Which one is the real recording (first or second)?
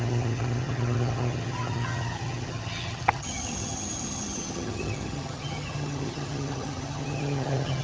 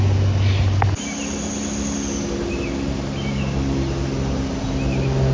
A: second